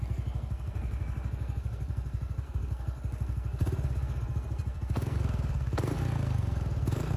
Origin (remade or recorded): remade